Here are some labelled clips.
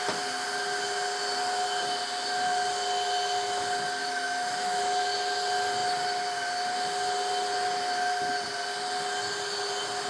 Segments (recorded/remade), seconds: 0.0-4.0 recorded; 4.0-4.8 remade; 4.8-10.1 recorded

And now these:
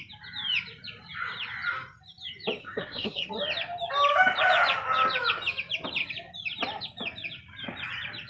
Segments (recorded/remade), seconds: 0.0-2.6 recorded; 2.6-3.3 remade; 3.3-8.3 recorded

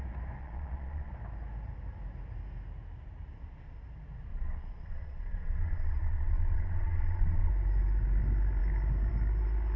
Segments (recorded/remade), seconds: 0.0-0.4 recorded; 0.4-1.1 remade; 1.1-4.3 recorded; 4.3-7.5 remade; 7.5-9.8 recorded

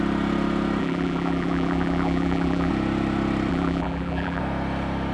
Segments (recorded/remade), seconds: 0.0-0.8 recorded; 0.8-2.7 remade; 2.7-3.5 recorded; 3.5-4.4 remade; 4.4-5.1 recorded

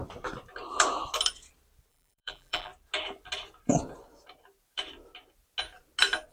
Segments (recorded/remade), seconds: 0.0-1.9 recorded; 1.9-2.7 remade; 2.7-6.3 recorded

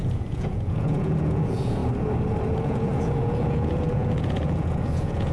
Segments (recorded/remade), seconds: 0.0-1.8 remade; 1.8-2.5 recorded; 2.5-5.3 remade

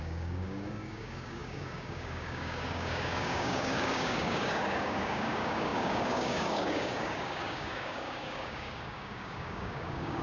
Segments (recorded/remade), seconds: 0.0-10.2 remade